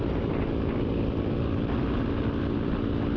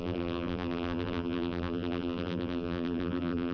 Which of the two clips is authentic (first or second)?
first